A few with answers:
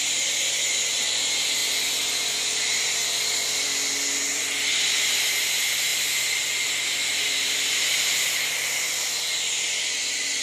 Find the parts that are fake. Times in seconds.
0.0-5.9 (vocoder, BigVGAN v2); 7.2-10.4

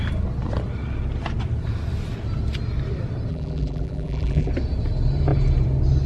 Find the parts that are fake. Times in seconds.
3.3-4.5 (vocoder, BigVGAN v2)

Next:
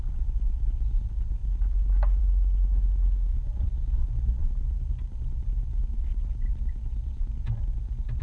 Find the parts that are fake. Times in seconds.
none